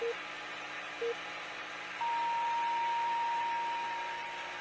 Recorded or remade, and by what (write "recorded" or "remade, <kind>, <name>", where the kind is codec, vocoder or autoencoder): recorded